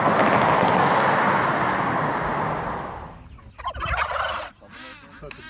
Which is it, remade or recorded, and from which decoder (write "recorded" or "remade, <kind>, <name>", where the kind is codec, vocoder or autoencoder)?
recorded